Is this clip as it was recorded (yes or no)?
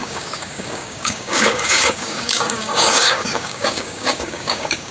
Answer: no